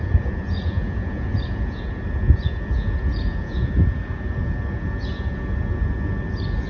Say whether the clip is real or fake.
real